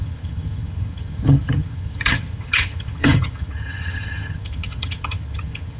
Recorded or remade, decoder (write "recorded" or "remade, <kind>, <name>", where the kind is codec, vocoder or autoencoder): remade, vocoder, HiFi-GAN